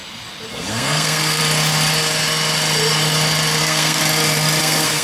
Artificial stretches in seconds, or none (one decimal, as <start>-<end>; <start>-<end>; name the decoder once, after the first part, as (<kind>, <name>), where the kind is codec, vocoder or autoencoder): 0.5-1.4 (codec, SNAC); 3.6-4.0; 4.6-5.0